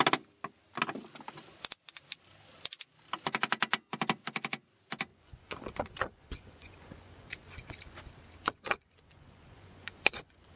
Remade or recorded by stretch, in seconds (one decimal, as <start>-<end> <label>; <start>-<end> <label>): 0.0-5.1 recorded; 5.1-7.8 remade; 7.8-8.4 recorded; 8.4-10.6 remade